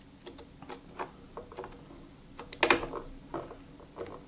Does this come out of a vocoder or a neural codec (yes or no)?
no